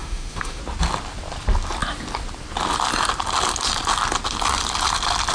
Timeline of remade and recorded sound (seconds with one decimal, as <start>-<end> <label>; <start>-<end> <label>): 0.0-0.6 remade; 0.6-5.3 recorded